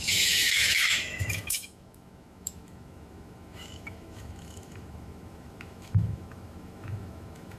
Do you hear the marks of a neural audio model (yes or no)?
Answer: yes